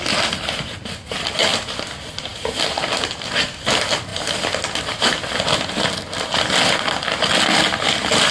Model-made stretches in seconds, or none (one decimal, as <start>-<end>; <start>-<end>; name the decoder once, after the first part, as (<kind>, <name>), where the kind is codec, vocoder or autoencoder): none